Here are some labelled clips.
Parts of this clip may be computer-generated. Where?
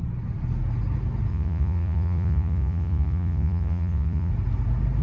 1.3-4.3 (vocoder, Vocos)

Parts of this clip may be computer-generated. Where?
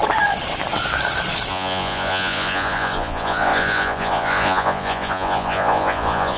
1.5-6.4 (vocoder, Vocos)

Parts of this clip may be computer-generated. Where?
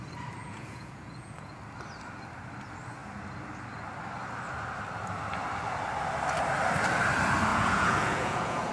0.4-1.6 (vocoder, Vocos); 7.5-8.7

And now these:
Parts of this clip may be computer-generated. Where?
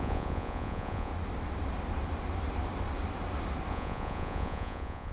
0.0-1.1 (vocoder, Vocos); 3.7-5.1